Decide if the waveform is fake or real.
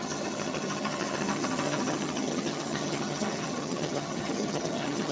fake